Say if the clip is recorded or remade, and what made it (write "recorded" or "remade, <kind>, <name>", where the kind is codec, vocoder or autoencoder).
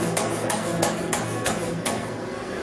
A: remade, codec, SNAC